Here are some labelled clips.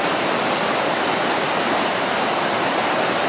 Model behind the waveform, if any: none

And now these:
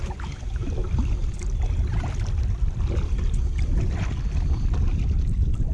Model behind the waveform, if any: none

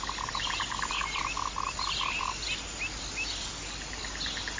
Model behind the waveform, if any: none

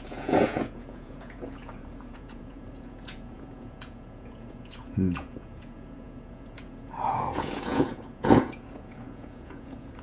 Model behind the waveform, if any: vocoder, Vocos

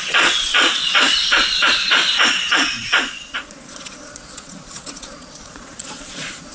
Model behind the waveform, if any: vocoder, Vocos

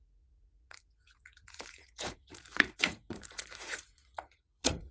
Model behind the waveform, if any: vocoder, Vocos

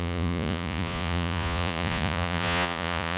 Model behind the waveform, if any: vocoder, Vocos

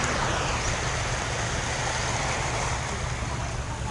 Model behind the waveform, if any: none